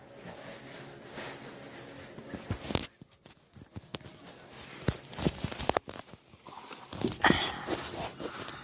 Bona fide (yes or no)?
yes